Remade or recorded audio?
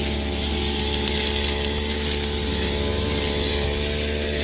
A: recorded